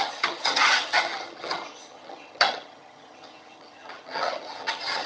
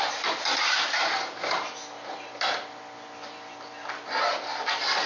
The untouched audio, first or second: second